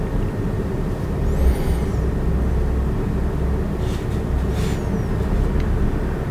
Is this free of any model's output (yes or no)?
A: yes